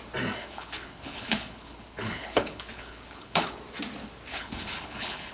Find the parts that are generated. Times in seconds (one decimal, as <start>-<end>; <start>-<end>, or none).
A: 0.4-3.6; 4.3-5.3